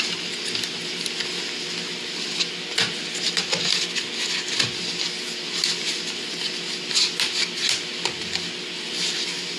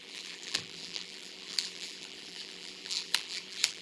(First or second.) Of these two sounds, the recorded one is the first